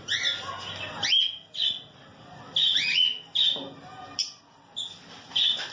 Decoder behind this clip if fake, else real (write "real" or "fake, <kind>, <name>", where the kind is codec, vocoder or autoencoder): real